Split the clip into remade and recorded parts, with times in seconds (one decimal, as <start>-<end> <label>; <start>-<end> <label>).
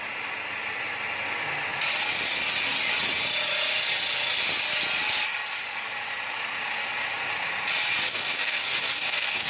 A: 0.0-8.1 recorded; 8.1-9.5 remade